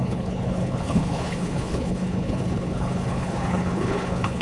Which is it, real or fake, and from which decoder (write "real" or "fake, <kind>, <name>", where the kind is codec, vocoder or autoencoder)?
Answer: fake, codec, HILCodec